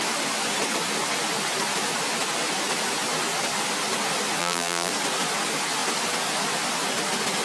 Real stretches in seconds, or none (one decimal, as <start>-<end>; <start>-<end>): 0.0-4.4; 4.9-7.4